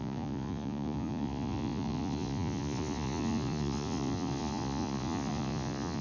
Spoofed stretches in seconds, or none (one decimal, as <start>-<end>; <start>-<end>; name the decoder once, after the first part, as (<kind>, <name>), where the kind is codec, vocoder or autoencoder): 0.0-6.0 (vocoder, Vocos)